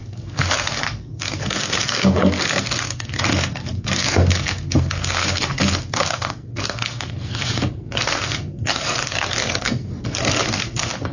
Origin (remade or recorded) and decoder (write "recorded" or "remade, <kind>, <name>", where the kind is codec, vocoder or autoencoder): remade, codec, SNAC